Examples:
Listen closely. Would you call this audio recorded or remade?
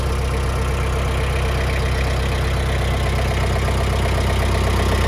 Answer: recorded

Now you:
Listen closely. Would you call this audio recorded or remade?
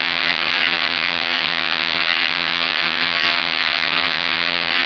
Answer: remade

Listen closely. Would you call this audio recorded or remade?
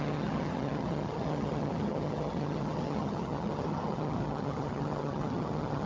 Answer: remade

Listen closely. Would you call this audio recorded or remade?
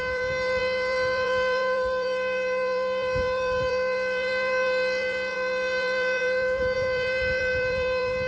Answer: remade